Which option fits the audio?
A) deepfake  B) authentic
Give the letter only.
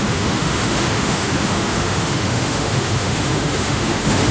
A